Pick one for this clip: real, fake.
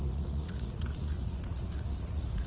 fake